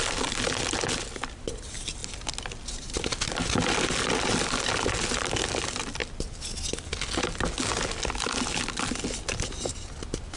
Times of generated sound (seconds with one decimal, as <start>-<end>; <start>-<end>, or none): none